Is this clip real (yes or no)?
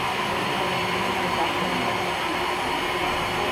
yes